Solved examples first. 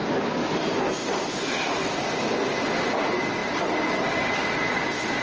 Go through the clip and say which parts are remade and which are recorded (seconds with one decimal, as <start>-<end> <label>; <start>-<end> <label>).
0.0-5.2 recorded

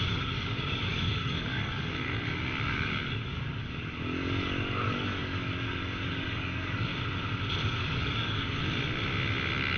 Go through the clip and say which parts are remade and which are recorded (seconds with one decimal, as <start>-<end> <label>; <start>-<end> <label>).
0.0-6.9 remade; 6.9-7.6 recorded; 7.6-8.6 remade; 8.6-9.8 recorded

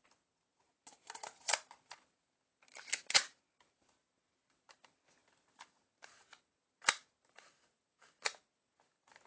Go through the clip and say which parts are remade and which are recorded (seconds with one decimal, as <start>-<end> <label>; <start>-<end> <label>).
0.0-9.3 recorded